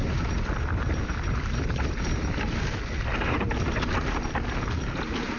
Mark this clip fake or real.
real